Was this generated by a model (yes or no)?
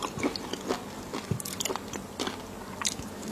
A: no